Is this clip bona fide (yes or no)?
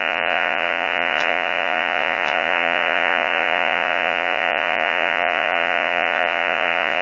no